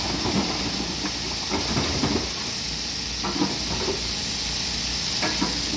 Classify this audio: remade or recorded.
recorded